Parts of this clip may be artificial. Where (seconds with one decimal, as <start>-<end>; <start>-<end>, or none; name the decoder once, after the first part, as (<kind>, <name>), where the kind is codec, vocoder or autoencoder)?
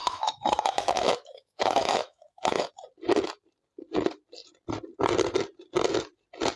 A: 0.0-2.7 (autoencoder, DAC-VAE)